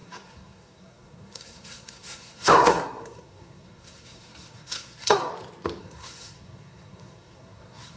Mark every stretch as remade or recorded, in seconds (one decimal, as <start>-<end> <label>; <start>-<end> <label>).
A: 0.0-5.3 remade; 5.3-5.8 recorded; 5.8-8.0 remade